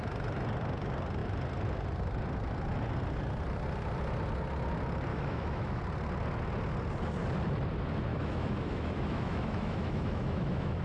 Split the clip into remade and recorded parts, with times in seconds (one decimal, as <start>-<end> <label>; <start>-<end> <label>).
0.0-5.1 recorded; 5.1-5.8 remade; 5.8-8.1 recorded; 8.1-10.8 remade